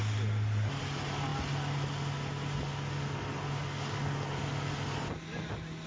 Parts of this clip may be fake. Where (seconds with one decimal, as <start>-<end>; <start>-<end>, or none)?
none

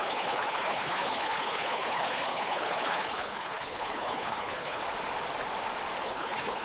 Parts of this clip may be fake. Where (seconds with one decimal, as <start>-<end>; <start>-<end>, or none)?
0.0-4.8; 6.0-6.6

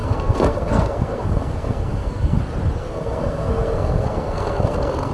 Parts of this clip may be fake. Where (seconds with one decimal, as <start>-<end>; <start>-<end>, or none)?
0.0-2.4; 2.8-5.1

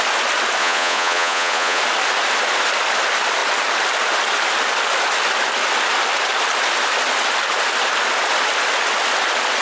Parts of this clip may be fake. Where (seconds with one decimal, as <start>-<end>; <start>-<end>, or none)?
0.6-1.8

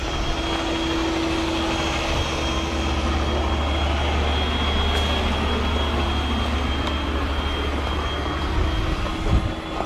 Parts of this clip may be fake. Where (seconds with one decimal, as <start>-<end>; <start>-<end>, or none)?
none

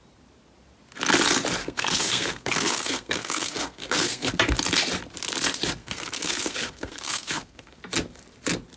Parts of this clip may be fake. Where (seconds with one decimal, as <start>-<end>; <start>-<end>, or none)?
1.6-4.3; 5.8-7.8